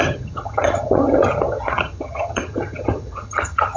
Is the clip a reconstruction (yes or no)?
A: yes